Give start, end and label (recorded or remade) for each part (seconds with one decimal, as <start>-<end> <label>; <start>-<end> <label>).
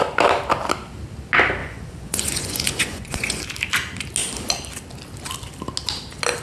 0.0-1.6 recorded; 1.6-3.4 remade; 3.4-6.4 recorded